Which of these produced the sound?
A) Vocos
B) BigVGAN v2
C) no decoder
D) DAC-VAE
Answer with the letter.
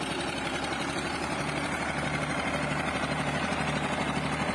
B